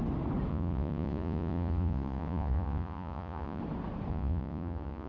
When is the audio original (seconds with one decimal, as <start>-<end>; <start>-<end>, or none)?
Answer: 0.0-0.5; 3.6-4.1